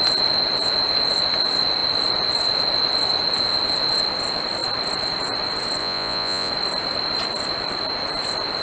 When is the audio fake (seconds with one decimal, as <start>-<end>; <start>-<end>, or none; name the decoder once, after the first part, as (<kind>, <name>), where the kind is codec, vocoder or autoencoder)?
5.8-6.5 (vocoder, Vocos)